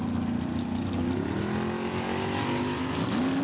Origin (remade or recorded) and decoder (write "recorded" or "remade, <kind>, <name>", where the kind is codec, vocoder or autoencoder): recorded